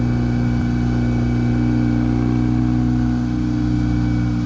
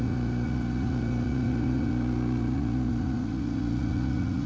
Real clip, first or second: first